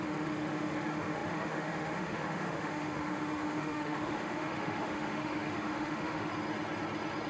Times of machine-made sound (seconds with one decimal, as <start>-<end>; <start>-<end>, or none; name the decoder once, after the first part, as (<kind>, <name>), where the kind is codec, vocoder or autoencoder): 0.0-6.3 (autoencoder, DAC-VAE)